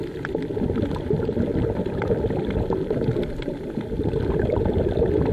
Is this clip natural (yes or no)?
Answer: no